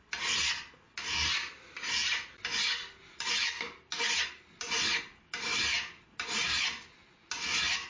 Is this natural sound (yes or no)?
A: yes